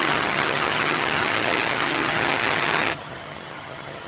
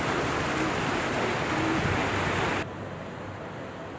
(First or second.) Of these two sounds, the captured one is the second